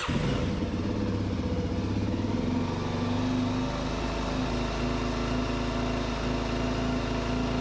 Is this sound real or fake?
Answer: real